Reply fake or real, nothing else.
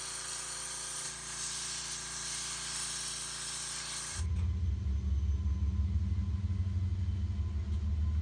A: real